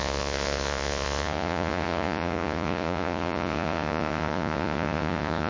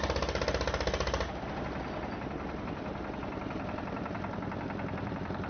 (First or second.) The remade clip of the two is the first